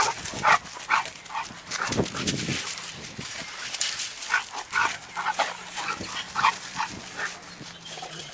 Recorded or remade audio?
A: recorded